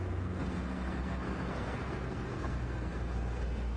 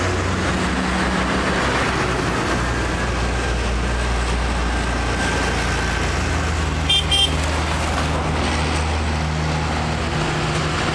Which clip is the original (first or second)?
second